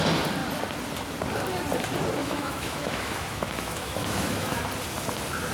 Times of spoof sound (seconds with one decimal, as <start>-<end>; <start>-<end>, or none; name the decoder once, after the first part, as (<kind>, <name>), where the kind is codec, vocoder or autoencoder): 2.2-4.6 (autoencoder, DAC-VAE)